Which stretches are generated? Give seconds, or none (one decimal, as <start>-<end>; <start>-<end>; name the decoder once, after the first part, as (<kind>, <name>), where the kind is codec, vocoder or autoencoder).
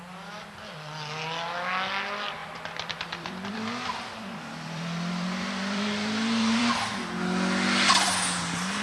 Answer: 2.4-6.6 (vocoder, BigVGAN v2)